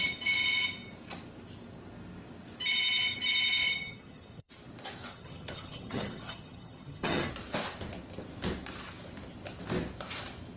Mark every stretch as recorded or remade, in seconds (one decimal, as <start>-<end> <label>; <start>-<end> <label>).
0.0-3.6 recorded; 3.6-4.5 remade; 4.5-5.1 recorded; 5.1-7.3 remade; 7.3-10.6 recorded

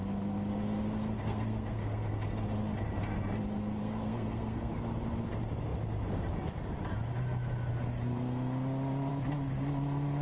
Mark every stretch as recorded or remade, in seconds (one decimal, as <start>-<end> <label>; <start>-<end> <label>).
0.0-1.3 recorded; 1.3-2.1 remade; 2.1-3.8 recorded; 3.8-4.8 remade; 4.8-10.2 recorded

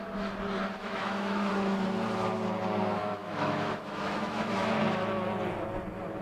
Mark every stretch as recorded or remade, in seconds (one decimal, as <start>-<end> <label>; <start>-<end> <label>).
0.0-0.8 recorded; 0.8-1.5 remade; 1.5-3.2 recorded; 3.2-4.8 remade; 4.8-6.2 recorded

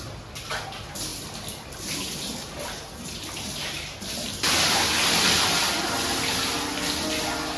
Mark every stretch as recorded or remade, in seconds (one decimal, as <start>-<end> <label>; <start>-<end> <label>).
0.0-7.6 recorded

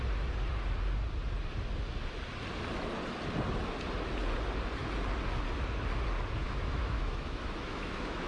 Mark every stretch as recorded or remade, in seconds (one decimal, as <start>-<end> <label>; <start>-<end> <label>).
0.0-6.4 recorded; 6.4-8.3 remade